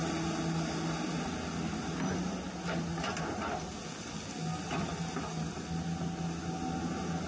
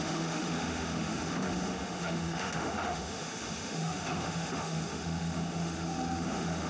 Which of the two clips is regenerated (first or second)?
second